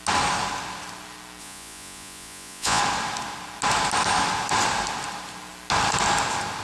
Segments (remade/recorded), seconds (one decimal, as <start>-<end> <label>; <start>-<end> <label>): 0.0-1.4 recorded; 1.4-2.8 remade; 2.8-6.6 recorded